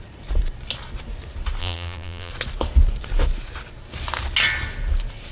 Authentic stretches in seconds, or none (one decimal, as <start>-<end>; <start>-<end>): 0.0-1.6; 2.3-5.3